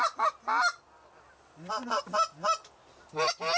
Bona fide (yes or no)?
yes